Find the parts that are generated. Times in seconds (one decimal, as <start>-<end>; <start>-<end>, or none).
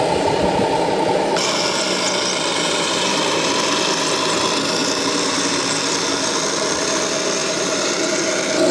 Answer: 2.5-3.5; 7.4-7.9